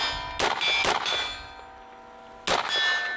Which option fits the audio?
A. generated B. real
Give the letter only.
B